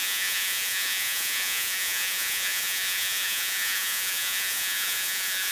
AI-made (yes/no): yes